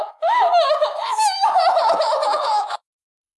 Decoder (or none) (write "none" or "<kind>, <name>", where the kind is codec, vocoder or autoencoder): autoencoder, DAC-VAE